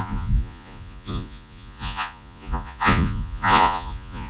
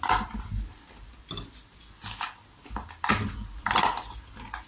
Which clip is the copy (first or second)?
first